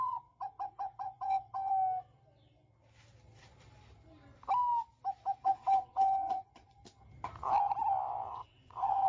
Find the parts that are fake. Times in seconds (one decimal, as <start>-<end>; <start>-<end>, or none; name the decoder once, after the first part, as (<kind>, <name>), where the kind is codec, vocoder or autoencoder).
0.0-1.7 (vocoder, WaveNeXt); 5.4-6.8; 8.3-9.1